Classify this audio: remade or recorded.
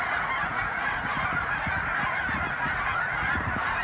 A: remade